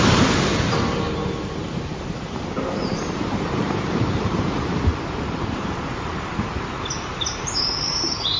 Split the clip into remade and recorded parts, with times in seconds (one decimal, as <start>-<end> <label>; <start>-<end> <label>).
0.0-4.9 remade; 4.9-5.5 recorded; 5.5-8.4 remade